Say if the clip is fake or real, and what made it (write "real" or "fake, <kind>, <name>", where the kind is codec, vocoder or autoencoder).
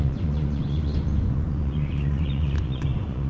fake, vocoder, Vocos